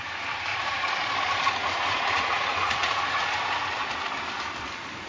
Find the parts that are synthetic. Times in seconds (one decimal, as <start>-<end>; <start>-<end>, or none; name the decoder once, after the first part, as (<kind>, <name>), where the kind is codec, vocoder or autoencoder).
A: 0.5-1.0 (vocoder, Vocos); 1.6-3.2